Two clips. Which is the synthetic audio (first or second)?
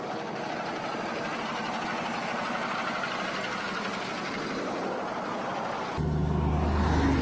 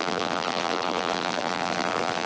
second